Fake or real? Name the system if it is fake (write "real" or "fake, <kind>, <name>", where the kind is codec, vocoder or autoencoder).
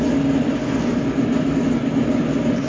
real